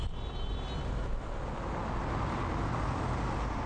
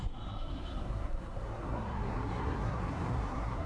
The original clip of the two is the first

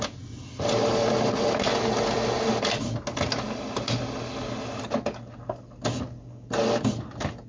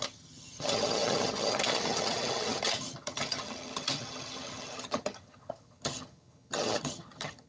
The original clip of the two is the first